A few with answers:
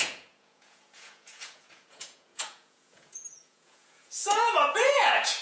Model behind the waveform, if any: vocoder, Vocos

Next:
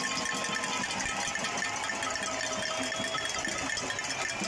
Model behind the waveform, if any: none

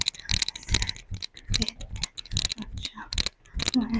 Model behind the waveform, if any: none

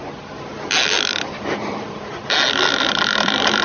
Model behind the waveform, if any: none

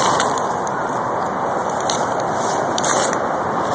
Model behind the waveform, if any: none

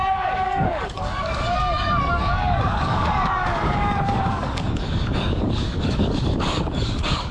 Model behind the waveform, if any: codec, DAC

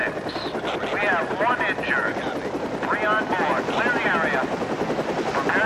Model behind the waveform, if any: none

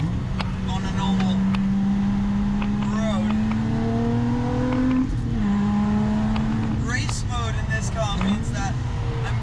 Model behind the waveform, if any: none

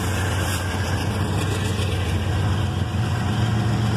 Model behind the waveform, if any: none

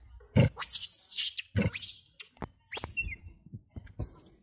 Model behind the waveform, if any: none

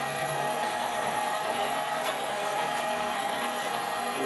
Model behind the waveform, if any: codec, SNAC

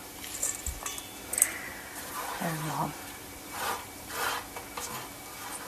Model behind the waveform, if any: none